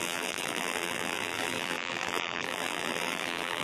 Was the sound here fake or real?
fake